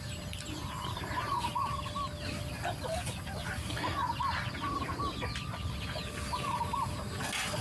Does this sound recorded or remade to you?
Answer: recorded